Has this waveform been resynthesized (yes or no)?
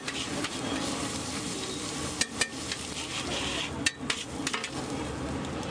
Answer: no